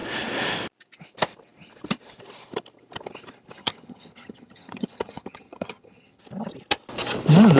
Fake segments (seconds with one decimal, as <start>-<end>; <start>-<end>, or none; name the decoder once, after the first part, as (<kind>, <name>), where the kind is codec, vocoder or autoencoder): 3.6-6.2 (vocoder, HiFi-GAN)